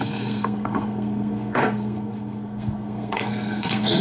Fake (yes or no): yes